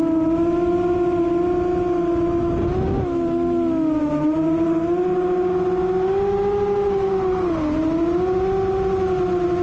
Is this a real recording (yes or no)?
yes